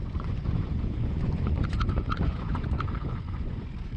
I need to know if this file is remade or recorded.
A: remade